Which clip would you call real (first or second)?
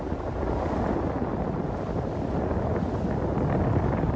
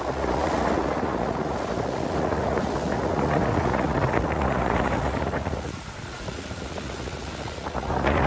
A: first